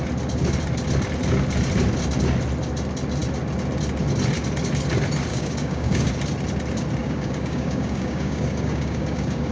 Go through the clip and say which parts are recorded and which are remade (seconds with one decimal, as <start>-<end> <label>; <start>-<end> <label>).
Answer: 0.0-5.3 recorded; 5.3-6.1 remade; 6.1-7.0 recorded; 7.0-9.5 remade